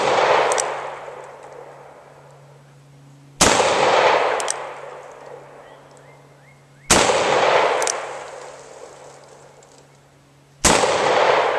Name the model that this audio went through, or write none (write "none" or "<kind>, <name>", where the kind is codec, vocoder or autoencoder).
none